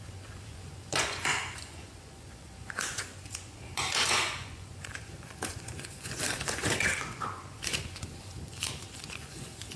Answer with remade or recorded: remade